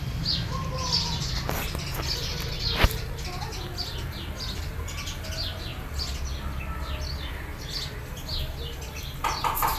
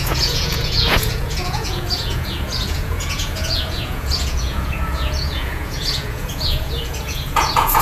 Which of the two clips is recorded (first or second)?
first